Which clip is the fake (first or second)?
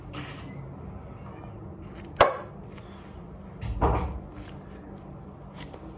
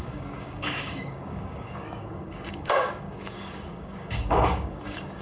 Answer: second